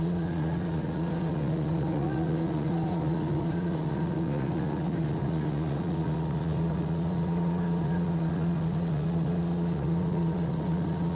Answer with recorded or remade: remade